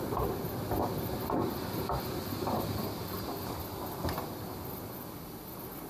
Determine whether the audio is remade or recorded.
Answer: recorded